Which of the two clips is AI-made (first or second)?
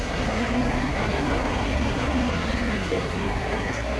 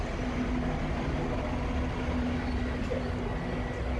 first